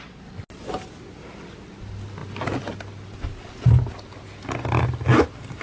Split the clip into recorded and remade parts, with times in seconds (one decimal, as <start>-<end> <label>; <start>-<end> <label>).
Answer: 0.0-5.6 recorded

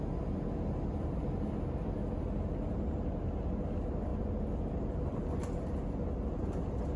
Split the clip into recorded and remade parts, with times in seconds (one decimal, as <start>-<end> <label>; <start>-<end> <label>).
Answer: 0.0-7.0 recorded